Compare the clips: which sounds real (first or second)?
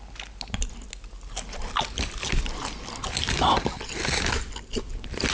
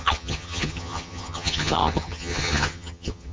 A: first